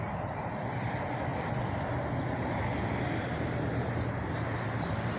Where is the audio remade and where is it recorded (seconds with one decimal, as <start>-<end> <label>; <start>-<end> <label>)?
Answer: 0.0-5.2 recorded